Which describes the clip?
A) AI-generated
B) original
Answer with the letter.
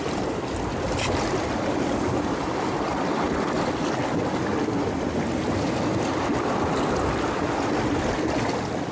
B